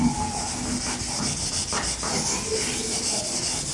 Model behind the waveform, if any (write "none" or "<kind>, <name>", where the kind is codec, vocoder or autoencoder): none